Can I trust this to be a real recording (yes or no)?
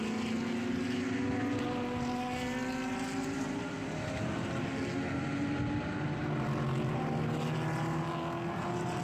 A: yes